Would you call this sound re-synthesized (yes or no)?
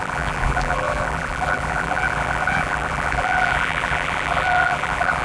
yes